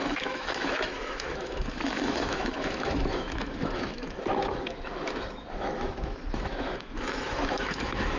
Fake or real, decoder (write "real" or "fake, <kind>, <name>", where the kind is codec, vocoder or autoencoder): fake, autoencoder, DAC-VAE